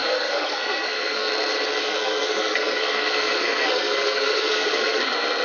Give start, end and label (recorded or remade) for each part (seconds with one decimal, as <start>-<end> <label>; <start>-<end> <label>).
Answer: 0.0-1.3 remade; 1.3-1.8 recorded; 1.8-5.0 remade; 5.0-5.4 recorded